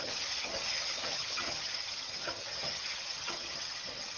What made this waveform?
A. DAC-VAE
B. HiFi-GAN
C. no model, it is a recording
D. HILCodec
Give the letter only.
B